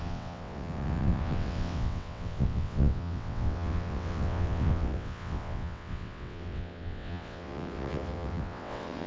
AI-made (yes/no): yes